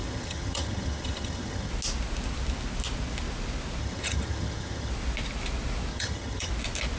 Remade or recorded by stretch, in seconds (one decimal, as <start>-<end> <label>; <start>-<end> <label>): 0.0-1.7 remade; 1.7-3.8 recorded; 3.8-4.9 remade; 4.9-5.9 recorded; 5.9-6.5 remade; 6.5-7.0 recorded